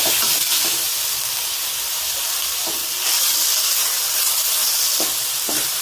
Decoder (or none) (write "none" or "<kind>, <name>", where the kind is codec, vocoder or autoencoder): none